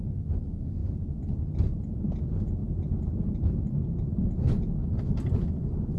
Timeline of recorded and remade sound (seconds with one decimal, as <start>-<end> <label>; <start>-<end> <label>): 0.0-2.6 recorded; 2.6-4.7 remade; 4.7-6.0 recorded

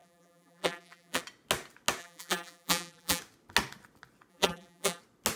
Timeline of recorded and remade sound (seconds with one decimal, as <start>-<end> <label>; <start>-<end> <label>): 0.0-1.2 remade; 1.2-2.0 recorded; 2.0-3.2 remade; 3.2-4.3 recorded; 4.3-5.0 remade; 5.0-5.4 recorded

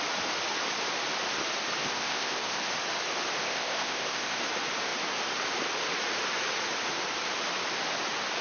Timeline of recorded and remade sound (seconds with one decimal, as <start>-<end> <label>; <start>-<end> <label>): 0.0-1.8 recorded; 1.8-2.6 remade; 2.6-3.4 recorded; 3.4-4.4 remade; 4.4-8.4 recorded

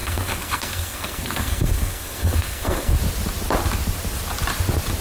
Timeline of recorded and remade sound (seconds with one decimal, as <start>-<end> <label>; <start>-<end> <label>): 0.0-3.0 remade; 3.0-5.0 recorded

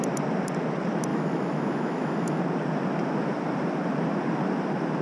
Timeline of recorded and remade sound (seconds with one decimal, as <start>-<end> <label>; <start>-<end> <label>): 0.0-1.1 recorded; 1.1-2.4 remade; 2.4-5.0 recorded

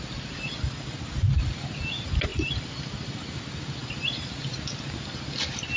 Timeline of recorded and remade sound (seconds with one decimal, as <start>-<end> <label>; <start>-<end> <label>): 0.0-2.3 recorded; 2.3-3.4 remade; 3.4-5.8 recorded

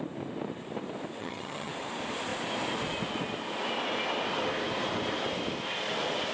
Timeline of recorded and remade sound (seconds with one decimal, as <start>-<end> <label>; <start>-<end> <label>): 0.0-1.2 recorded; 1.2-1.7 remade; 1.7-6.3 recorded

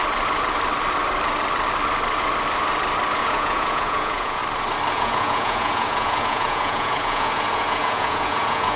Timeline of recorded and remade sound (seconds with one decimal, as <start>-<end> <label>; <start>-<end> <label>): 0.0-3.2 recorded; 3.2-4.4 remade; 4.4-4.9 recorded; 4.9-8.8 remade